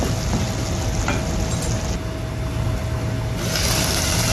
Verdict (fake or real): real